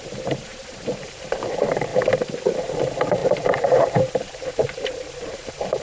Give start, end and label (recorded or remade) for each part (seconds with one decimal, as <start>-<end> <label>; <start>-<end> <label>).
0.0-1.9 remade; 1.9-2.6 recorded; 2.6-5.8 remade